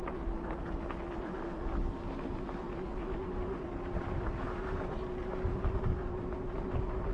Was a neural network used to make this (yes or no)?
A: no